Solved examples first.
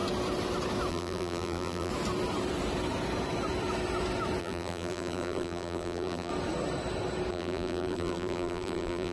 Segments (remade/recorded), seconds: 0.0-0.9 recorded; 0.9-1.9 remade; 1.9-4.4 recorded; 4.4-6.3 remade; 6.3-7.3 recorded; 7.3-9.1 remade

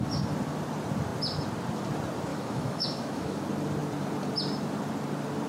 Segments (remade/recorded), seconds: 0.0-2.3 recorded; 2.3-3.4 remade; 3.4-5.5 recorded

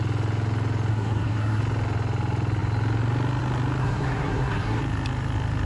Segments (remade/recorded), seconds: 0.0-0.9 recorded; 0.9-1.6 remade; 1.6-3.8 recorded; 3.8-4.8 remade; 4.8-5.7 recorded

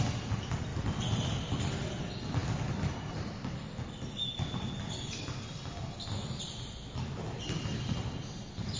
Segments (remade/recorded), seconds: 0.0-0.7 recorded; 0.7-2.0 remade; 2.0-8.8 recorded

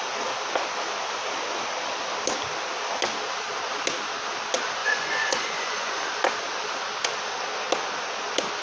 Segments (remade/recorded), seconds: 0.0-4.8 recorded; 4.8-6.1 remade; 6.1-8.6 recorded